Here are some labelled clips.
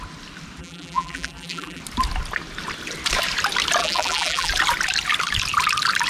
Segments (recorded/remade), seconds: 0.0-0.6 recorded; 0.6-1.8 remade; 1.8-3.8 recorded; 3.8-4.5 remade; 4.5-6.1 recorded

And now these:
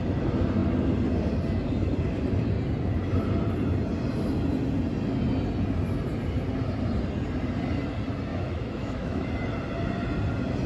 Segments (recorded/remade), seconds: 0.0-8.3 recorded; 8.3-9.3 remade; 9.3-10.7 recorded

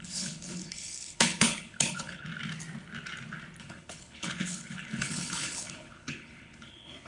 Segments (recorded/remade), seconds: 0.0-2.3 remade; 2.3-3.6 recorded; 3.6-7.1 remade

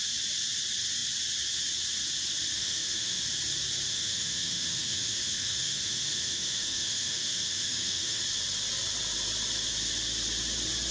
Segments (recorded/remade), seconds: 0.0-2.6 recorded; 2.6-3.2 remade; 3.2-3.9 recorded; 3.9-8.2 remade; 8.2-10.9 recorded

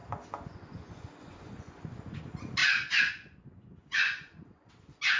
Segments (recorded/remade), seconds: 0.0-2.2 remade; 2.2-2.6 recorded; 2.6-4.7 remade; 4.7-5.2 recorded